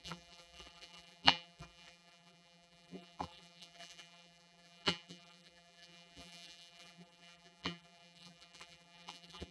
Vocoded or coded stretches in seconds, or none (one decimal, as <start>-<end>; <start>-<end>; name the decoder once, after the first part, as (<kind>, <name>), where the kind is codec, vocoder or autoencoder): 0.0-9.5 (vocoder, BigVGAN v2)